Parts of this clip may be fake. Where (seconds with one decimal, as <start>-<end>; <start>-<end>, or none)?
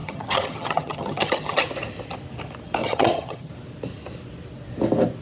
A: 0.0-1.7; 2.8-3.5